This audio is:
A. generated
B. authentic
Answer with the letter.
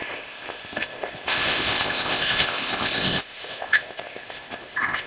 A